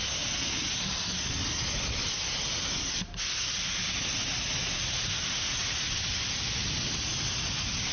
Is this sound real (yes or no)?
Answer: yes